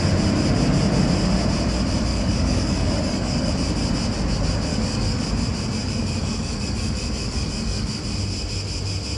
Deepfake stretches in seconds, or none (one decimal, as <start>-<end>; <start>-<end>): 2.1-3.5; 4.7-5.3; 5.8-8.0